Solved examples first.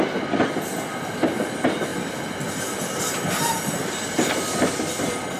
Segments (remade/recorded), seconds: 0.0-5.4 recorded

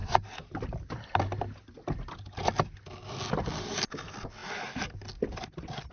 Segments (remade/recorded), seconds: 0.0-5.9 recorded

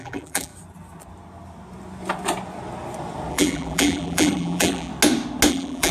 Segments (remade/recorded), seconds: 0.0-0.5 remade; 0.5-3.3 recorded; 3.3-4.9 remade; 4.9-5.5 recorded; 5.5-5.9 remade

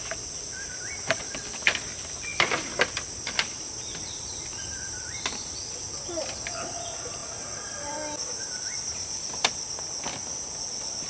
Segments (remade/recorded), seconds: 0.0-2.3 recorded; 2.3-6.1 remade; 6.1-11.1 recorded

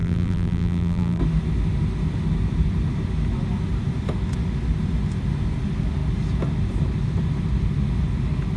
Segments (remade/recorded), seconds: 0.0-1.2 remade; 1.2-8.6 recorded